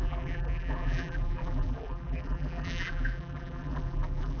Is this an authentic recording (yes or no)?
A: no